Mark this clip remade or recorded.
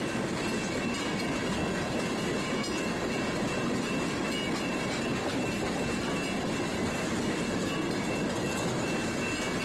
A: recorded